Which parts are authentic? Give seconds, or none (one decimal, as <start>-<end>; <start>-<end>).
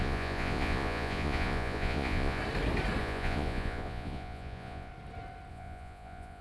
2.4-3.0; 4.9-5.5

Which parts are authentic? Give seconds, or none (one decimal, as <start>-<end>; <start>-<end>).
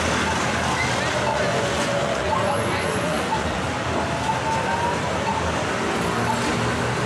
0.0-1.3; 3.6-7.1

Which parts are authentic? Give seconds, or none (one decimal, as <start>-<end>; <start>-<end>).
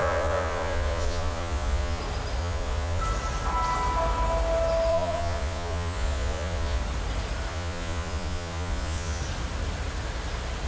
2.0-2.4; 3.0-4.9; 6.8-7.5; 9.2-10.7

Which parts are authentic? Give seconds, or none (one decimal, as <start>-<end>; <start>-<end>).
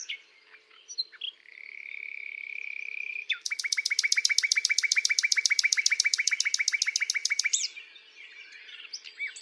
0.0-1.5; 6.3-7.2; 8.2-9.4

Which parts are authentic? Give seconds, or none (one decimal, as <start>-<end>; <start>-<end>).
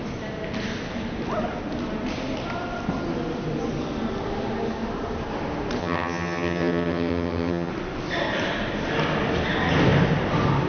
0.0-5.8; 7.7-10.7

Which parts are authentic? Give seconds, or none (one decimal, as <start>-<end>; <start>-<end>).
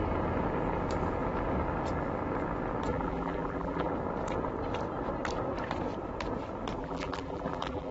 0.0-2.9; 3.9-6.8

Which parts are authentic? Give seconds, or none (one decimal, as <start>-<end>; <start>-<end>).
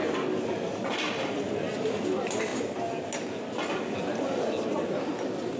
0.0-5.6